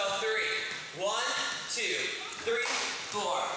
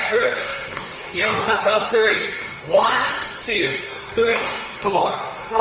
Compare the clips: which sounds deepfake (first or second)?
second